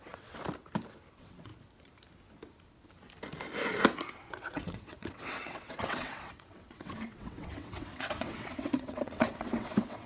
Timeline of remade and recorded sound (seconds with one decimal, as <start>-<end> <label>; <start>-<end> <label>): 0.0-0.4 remade; 0.4-1.1 recorded; 1.1-1.5 remade; 1.5-4.1 recorded; 4.1-10.1 remade